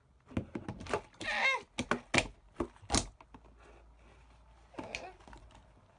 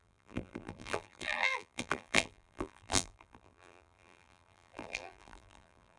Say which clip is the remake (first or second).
second